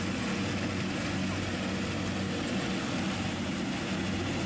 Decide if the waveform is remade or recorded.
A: recorded